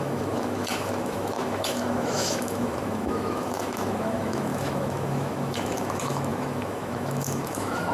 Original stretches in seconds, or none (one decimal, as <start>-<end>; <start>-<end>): none